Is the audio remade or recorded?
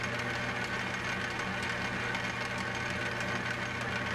recorded